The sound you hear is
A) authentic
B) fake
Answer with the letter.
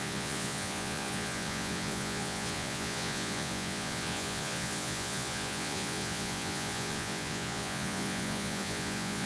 B